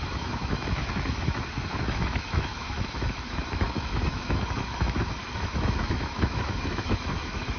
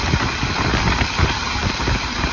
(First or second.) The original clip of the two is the second